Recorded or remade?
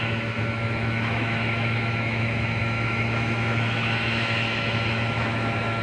remade